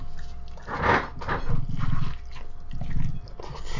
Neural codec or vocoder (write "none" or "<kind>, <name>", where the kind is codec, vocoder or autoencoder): none